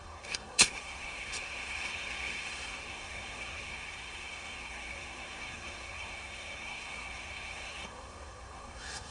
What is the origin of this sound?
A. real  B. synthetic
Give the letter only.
B